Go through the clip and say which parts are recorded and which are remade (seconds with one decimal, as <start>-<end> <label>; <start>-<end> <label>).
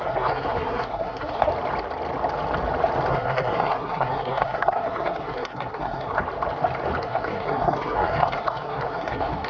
0.0-1.5 remade; 1.5-3.1 recorded; 3.1-6.2 remade; 6.2-7.0 recorded; 7.0-9.5 remade